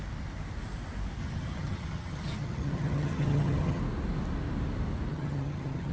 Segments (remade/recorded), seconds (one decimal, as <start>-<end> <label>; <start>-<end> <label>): 0.0-1.2 recorded; 1.2-3.8 remade; 3.8-5.1 recorded; 5.1-5.9 remade